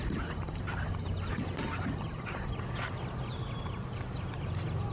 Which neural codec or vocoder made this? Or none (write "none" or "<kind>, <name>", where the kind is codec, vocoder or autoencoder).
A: none